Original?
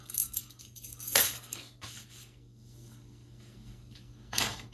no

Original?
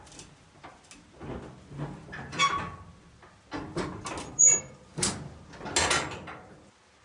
yes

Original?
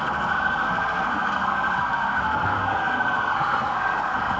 no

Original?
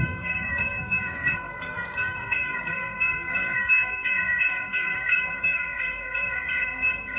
no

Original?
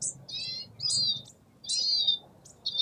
yes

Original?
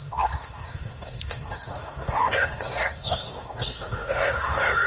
no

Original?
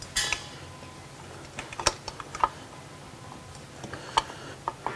yes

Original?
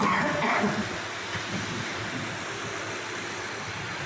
yes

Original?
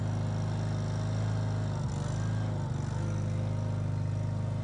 yes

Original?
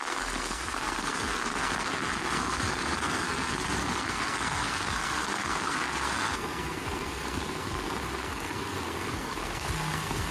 no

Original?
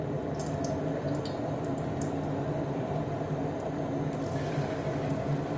yes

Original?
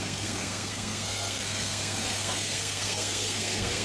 no